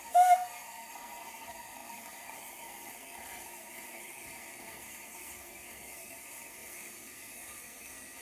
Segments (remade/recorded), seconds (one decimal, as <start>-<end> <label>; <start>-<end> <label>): 0.0-8.2 remade